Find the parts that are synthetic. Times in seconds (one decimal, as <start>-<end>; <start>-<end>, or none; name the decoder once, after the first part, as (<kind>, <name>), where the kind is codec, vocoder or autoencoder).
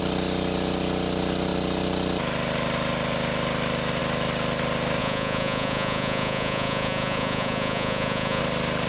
5.0-8.4 (vocoder, Vocos)